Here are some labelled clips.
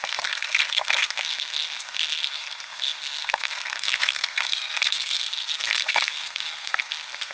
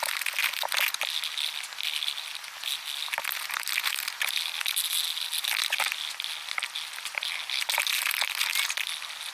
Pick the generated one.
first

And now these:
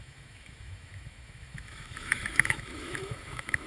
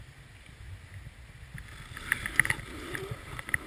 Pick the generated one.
first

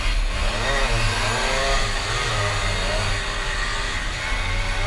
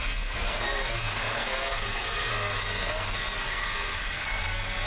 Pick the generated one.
second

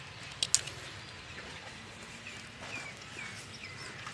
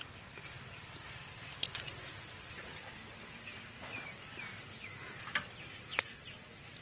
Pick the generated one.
second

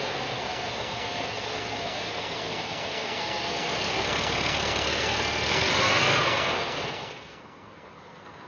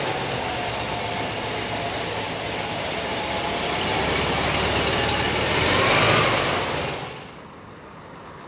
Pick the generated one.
first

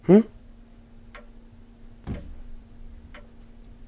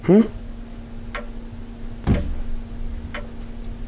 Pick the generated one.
first